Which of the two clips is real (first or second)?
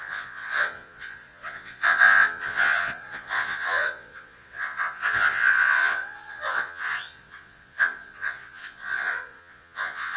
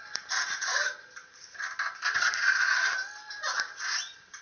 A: second